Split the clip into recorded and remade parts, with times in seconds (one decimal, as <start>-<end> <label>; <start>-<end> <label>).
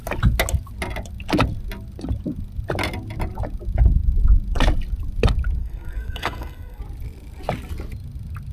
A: 0.0-5.6 recorded; 5.6-6.8 remade; 6.8-8.5 recorded